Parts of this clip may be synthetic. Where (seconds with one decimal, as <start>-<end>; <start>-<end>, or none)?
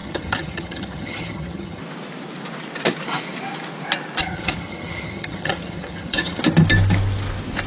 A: 0.0-1.8; 4.2-6.4